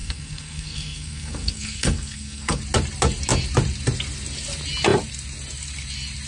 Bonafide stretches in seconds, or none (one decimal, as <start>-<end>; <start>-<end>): 2.6-6.3